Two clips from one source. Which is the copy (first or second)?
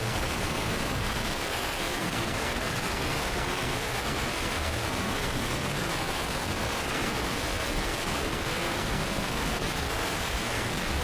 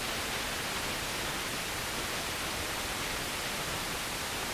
first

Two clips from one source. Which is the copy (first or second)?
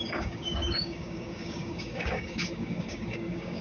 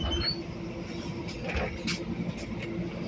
first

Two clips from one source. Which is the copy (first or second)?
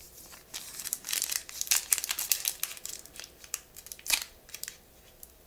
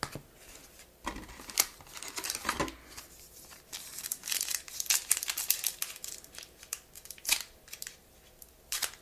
first